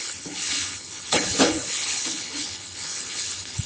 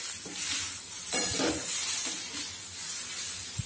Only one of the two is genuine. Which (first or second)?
second